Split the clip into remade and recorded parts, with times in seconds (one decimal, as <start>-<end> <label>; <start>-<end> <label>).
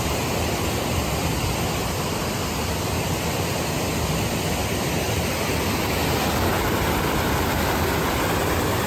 0.0-8.9 recorded